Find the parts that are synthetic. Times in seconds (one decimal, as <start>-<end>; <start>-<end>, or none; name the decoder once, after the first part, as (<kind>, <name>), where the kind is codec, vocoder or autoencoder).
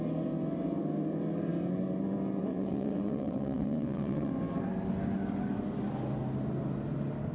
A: 2.4-4.3 (vocoder, WaveNeXt)